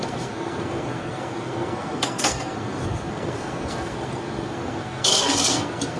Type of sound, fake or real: fake